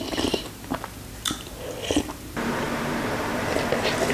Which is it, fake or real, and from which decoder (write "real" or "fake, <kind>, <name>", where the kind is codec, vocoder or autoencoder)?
real